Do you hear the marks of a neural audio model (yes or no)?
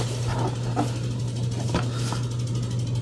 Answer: no